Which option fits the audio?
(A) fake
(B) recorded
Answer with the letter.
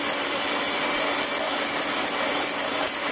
B